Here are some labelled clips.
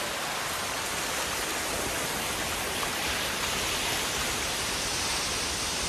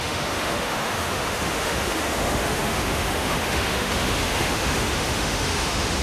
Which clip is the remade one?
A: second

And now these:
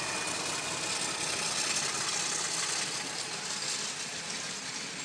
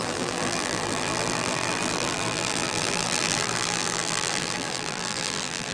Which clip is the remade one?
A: second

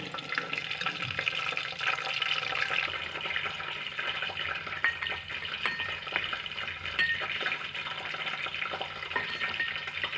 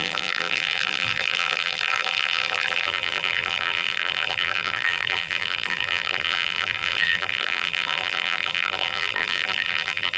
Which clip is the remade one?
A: second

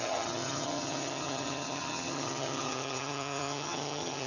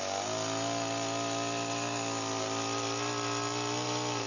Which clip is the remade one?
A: first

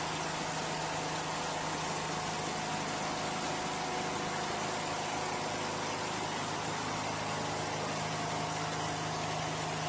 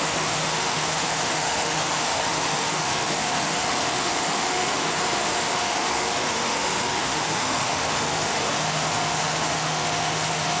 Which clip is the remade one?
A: second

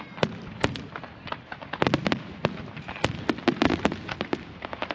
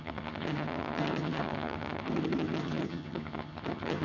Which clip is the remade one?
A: second